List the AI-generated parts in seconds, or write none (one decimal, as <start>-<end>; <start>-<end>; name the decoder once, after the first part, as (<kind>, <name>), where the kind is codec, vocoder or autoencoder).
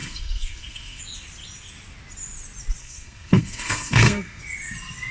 0.0-1.0 (codec, SNAC); 2.8-4.4